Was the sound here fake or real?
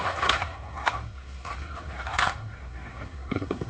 fake